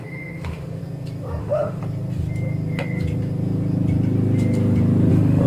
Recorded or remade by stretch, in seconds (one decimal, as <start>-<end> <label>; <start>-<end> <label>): 0.0-0.8 remade; 0.8-1.4 recorded; 1.4-1.8 remade; 1.8-5.1 recorded; 5.1-5.5 remade